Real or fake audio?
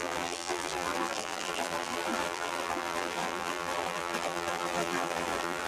fake